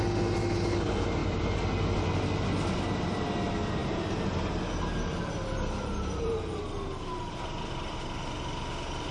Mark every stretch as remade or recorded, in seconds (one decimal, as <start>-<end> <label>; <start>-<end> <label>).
0.0-5.1 recorded; 5.1-6.6 remade; 6.6-9.1 recorded